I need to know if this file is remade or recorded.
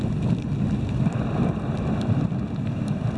recorded